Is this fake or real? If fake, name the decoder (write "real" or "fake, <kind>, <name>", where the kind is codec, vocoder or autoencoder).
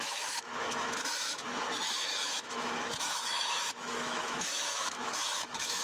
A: fake, autoencoder, DAC-VAE